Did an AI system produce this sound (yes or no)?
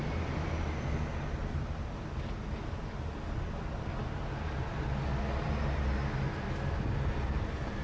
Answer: no